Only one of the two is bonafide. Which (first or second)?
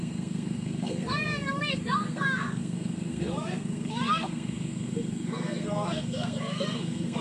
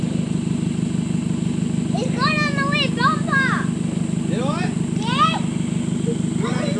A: second